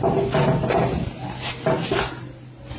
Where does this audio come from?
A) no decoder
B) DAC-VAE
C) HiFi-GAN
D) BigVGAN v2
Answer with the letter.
A